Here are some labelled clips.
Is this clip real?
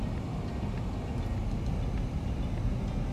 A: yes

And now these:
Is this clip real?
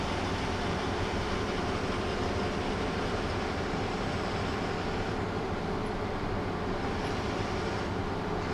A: yes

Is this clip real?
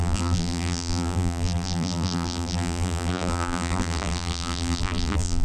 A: no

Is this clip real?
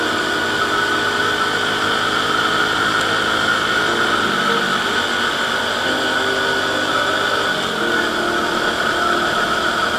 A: yes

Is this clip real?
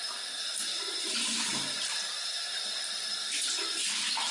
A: no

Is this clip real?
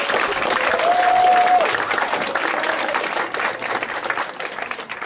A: yes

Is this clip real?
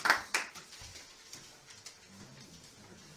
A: yes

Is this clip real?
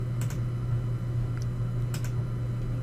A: yes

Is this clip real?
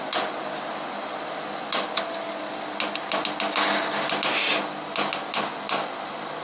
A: yes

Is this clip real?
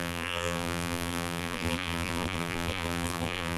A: no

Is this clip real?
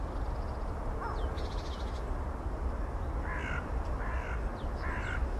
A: yes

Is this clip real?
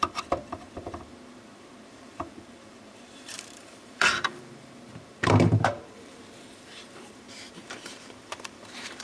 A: no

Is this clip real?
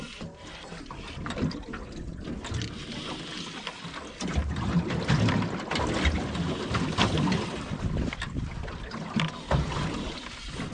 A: yes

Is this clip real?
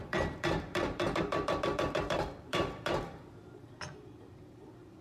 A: no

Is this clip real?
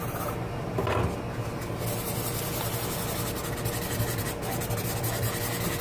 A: yes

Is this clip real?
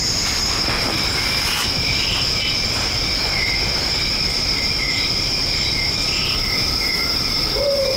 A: no